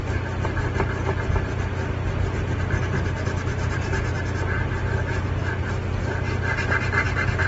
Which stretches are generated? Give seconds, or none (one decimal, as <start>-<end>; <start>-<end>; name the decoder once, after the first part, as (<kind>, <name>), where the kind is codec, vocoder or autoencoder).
none